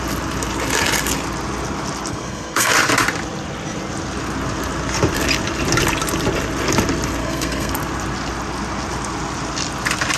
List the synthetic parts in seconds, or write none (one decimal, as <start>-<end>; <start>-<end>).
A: 2.1-2.7; 7.2-7.7

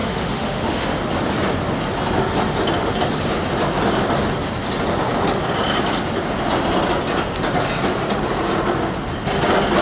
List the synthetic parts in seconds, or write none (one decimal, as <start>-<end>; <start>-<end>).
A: 0.0-1.0